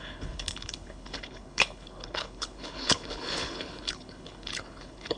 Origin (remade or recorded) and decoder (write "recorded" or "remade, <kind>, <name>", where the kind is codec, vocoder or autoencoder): remade, codec, HILCodec